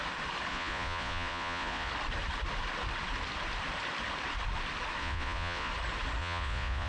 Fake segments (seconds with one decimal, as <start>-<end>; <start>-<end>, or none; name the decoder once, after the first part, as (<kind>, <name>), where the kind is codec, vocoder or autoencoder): 0.5-1.9 (vocoder, Vocos); 5.0-5.7; 6.2-6.9